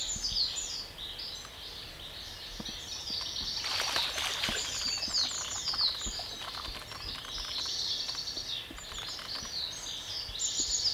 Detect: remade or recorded recorded